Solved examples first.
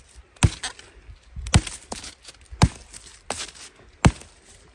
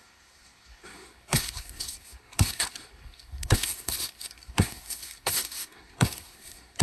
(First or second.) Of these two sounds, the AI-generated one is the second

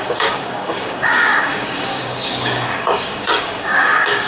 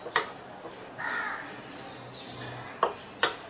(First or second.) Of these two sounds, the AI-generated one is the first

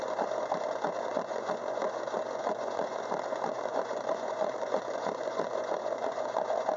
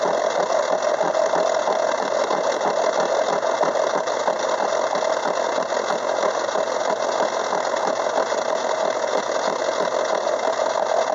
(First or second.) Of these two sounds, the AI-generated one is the first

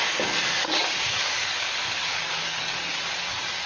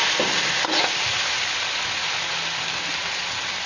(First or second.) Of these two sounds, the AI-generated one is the first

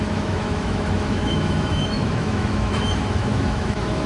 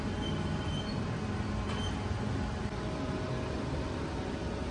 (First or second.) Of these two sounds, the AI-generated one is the first